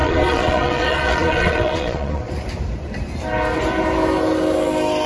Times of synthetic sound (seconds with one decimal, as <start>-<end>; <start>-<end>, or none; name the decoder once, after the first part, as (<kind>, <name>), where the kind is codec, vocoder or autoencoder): 0.0-2.2 (vocoder, Vocos)